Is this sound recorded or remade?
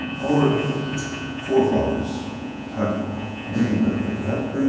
remade